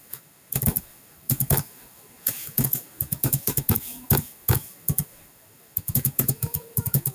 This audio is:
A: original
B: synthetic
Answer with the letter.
B